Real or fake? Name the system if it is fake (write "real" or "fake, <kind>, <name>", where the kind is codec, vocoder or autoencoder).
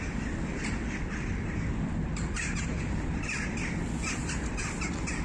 real